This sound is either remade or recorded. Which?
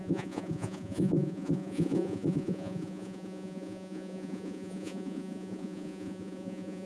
remade